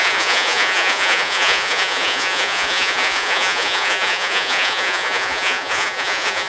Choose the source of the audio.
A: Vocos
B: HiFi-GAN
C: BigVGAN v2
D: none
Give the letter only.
A